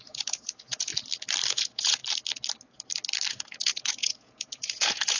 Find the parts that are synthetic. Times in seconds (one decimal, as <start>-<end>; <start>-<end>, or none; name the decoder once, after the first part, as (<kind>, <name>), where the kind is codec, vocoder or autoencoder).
0.0-0.9 (vocoder, Vocos); 1.5-2.0; 3.3-5.2